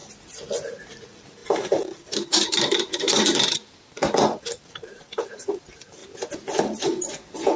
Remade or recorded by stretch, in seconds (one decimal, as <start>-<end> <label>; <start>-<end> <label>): 0.0-0.8 recorded; 0.8-6.0 remade; 6.0-6.6 recorded; 6.6-7.6 remade